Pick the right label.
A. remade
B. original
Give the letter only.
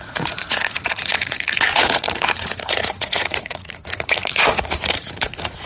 A